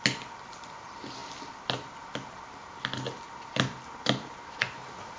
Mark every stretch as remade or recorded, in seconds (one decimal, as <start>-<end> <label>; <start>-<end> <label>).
0.0-5.2 recorded